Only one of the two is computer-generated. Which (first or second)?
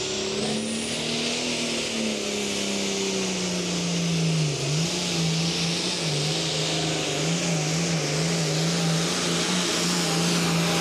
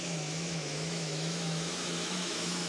second